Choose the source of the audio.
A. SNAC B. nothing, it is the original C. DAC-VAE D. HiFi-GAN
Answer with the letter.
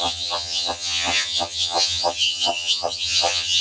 D